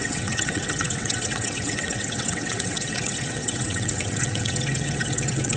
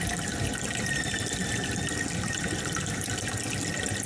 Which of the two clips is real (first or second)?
second